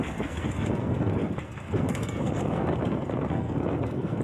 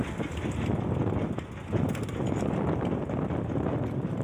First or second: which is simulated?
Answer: first